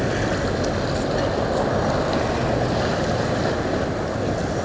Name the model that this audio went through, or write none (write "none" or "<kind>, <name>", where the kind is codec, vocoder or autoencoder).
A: none